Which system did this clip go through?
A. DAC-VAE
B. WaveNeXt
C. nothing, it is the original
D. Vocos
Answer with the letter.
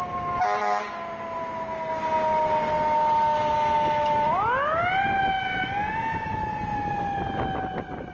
C